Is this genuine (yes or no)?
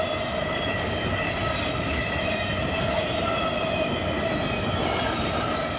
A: yes